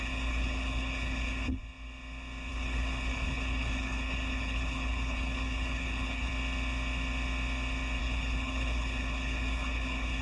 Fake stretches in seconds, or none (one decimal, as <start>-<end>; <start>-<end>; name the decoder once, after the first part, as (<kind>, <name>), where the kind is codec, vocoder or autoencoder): 0.0-1.6 (codec, HILCodec); 2.5-6.3; 8.0-10.2